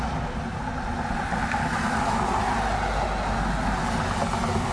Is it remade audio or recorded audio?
recorded